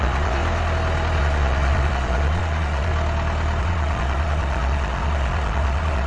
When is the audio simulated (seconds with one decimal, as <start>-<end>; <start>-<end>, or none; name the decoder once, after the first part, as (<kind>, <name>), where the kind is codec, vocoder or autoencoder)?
0.0-0.4 (vocoder, Vocos); 1.2-2.9; 3.6-6.1